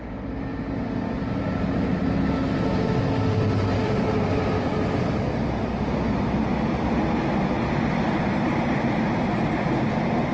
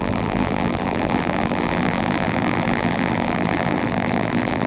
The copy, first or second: second